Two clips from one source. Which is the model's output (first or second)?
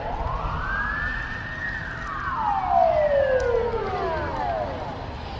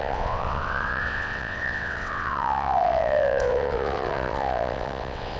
second